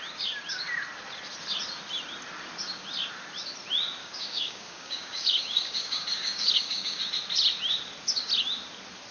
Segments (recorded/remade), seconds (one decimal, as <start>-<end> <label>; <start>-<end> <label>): 0.0-4.0 recorded; 4.0-7.0 remade; 7.0-9.1 recorded